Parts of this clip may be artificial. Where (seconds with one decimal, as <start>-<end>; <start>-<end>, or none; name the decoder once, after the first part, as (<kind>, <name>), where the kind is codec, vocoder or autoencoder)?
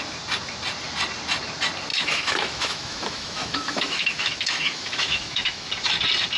1.9-5.7 (autoencoder, DAC-VAE)